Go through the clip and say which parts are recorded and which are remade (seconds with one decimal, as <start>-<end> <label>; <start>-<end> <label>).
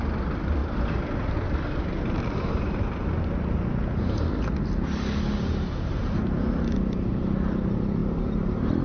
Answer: 0.0-8.8 recorded